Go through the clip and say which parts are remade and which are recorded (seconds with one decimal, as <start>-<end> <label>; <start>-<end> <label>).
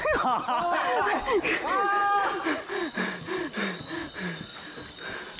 0.0-5.4 recorded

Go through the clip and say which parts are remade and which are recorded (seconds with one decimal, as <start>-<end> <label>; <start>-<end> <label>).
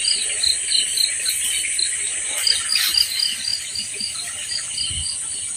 0.0-5.6 recorded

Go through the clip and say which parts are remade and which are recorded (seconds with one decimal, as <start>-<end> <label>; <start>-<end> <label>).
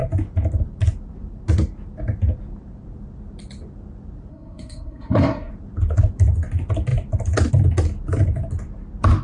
0.0-4.3 recorded; 4.3-5.5 remade; 5.5-9.2 recorded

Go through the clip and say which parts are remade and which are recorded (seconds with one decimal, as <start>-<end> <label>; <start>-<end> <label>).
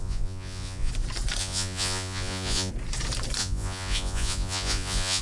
0.0-0.9 remade; 0.9-1.4 recorded; 1.4-2.7 remade; 2.7-3.4 recorded; 3.4-5.2 remade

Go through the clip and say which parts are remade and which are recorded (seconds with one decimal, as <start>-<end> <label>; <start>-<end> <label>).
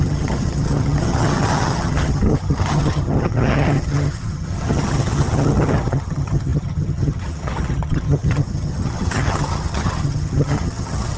0.0-11.2 remade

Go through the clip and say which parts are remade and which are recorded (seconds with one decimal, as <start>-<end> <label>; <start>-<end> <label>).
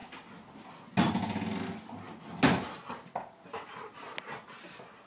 0.0-5.1 recorded